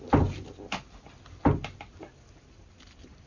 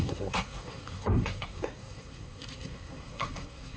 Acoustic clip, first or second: first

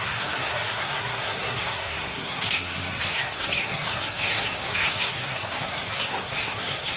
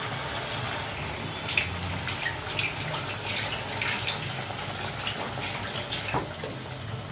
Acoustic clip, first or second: second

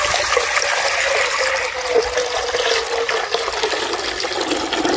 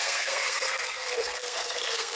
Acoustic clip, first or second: first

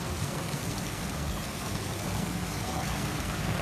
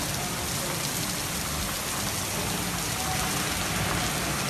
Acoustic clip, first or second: second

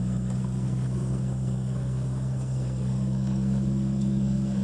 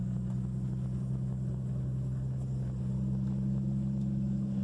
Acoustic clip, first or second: second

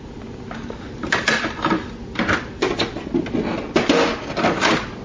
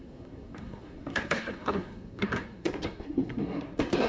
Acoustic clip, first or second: first